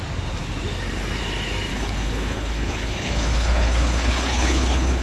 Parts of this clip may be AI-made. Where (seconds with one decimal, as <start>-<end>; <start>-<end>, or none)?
1.7-5.0